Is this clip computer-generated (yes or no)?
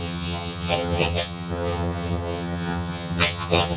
yes